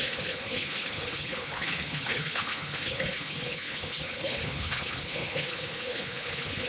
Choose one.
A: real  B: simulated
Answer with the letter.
B